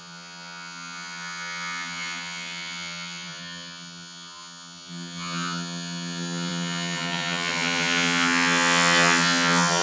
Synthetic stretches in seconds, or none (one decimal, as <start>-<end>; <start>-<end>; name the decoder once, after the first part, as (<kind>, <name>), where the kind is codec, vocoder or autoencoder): 0.0-9.8 (vocoder, HiFi-GAN)